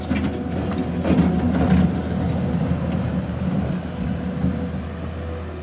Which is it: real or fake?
real